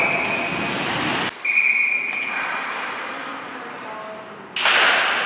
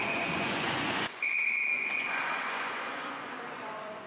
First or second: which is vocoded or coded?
second